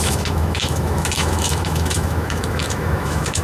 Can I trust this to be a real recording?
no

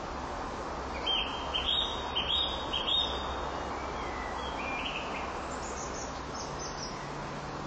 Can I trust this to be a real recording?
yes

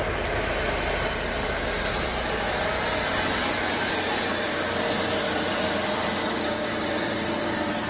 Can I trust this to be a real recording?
yes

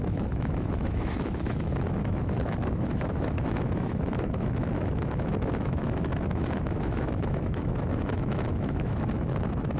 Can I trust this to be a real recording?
no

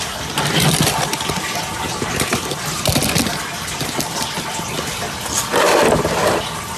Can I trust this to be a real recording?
yes